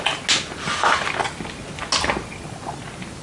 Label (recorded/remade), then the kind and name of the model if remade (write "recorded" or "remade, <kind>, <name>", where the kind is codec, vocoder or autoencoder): recorded